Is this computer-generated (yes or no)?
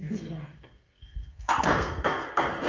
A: yes